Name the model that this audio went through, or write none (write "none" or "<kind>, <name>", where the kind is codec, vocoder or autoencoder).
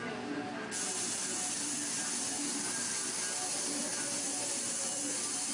none